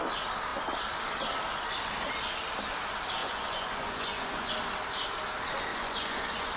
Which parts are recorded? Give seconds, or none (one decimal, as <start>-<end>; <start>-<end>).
0.0-3.2; 4.5-5.7